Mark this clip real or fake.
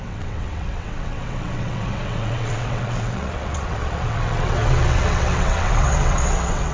fake